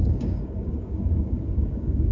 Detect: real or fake fake